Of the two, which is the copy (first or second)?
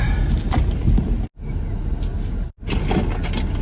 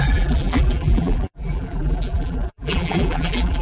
second